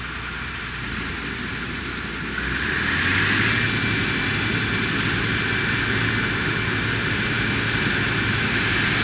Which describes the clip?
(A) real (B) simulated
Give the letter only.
A